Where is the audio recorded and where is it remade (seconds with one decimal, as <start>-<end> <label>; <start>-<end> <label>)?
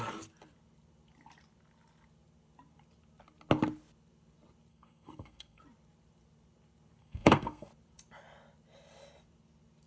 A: 0.0-4.7 recorded; 4.7-5.6 remade; 5.6-7.0 recorded; 7.0-7.7 remade; 7.7-9.9 recorded